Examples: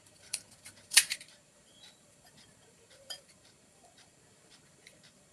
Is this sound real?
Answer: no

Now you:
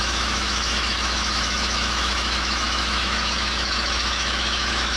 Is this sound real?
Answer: no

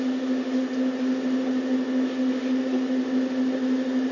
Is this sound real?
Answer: yes